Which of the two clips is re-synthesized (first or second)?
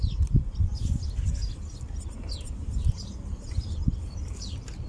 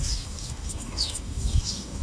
second